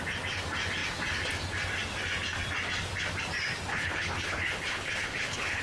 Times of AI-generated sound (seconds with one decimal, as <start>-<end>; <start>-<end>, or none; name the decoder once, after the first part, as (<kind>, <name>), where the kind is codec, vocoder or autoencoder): 3.7-5.6 (codec, HILCodec)